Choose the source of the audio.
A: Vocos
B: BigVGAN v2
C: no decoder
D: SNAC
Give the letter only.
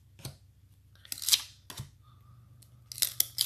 C